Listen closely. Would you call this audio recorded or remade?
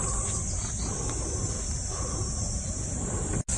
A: recorded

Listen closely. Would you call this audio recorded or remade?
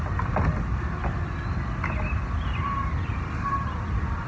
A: recorded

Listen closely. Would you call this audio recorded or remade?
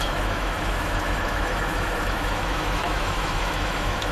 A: remade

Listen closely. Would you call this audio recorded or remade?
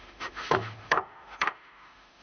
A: remade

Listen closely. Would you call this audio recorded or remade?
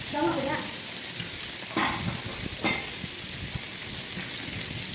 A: recorded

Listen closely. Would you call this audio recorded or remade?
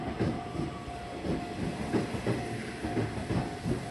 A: recorded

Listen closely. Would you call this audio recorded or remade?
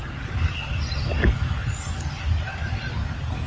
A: recorded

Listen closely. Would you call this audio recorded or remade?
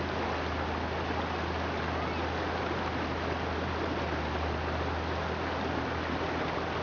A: recorded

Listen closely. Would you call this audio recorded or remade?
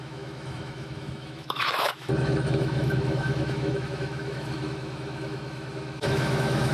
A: remade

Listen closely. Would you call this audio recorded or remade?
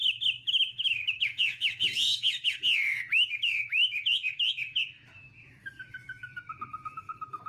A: remade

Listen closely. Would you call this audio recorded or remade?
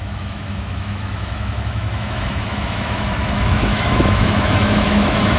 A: remade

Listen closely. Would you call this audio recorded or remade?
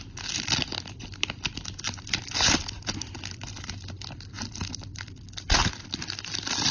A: recorded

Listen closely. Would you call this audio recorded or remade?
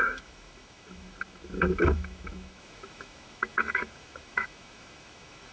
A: remade